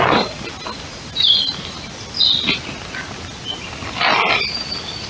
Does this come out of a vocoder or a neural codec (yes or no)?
no